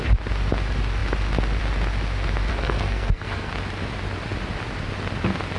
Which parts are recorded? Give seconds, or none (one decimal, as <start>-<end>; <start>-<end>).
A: 0.0-2.5; 3.5-5.6